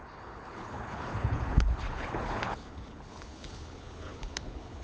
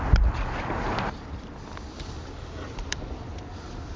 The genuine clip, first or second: second